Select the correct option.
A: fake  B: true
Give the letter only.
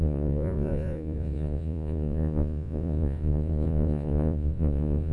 A